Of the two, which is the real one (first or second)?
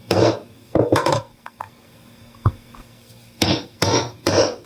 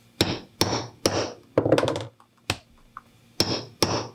second